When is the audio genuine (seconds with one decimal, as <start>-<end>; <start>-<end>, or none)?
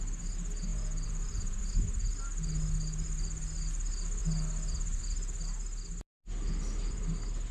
0.0-0.7; 1.6-7.5